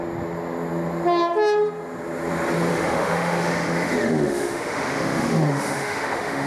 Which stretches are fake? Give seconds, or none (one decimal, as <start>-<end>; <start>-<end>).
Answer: 2.7-6.5